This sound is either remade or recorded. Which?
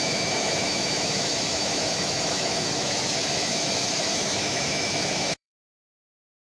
remade